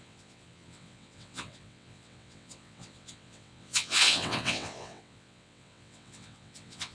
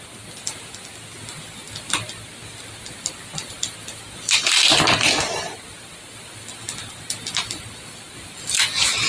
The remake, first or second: first